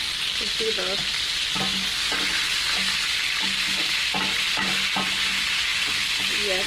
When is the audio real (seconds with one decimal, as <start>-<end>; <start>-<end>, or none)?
0.0-6.7